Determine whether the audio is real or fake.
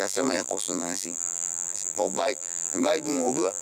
fake